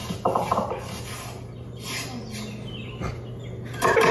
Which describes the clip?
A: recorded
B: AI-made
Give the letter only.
A